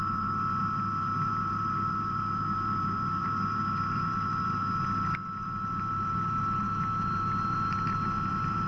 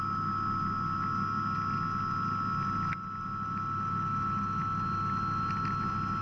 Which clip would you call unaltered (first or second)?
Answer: second